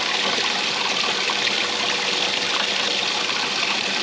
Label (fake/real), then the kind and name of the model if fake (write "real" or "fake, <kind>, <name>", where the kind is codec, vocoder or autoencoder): real